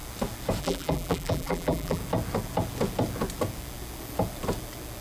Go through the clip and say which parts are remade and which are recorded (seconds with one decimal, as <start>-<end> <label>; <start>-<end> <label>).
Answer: 0.0-0.6 recorded; 0.6-2.0 remade; 2.0-5.0 recorded